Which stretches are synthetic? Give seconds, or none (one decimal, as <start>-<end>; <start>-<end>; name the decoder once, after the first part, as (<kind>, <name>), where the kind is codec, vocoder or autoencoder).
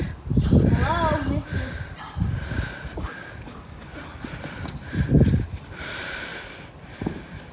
none